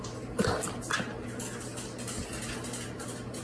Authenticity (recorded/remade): recorded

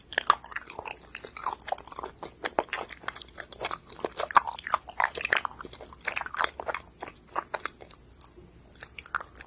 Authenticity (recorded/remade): recorded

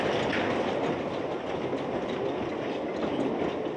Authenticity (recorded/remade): recorded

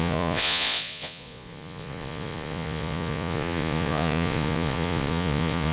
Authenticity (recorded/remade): remade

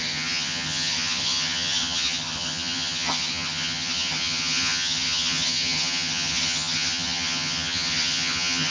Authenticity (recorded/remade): remade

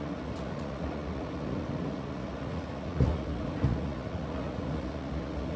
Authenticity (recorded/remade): remade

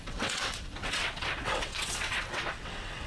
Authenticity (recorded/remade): remade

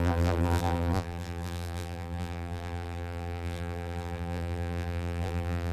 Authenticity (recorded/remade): remade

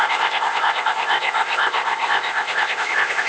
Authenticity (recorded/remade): remade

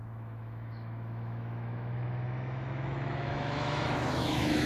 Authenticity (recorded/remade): remade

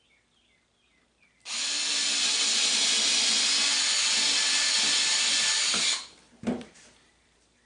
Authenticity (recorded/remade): recorded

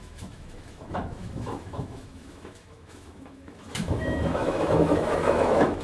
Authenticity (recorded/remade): remade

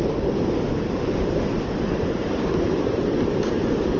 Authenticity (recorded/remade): remade